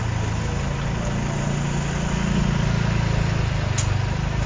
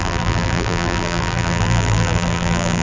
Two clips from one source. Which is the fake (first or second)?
second